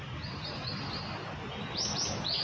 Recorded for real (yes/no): yes